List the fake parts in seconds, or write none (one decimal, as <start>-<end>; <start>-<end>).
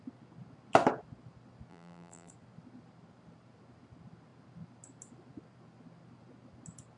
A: 1.7-2.3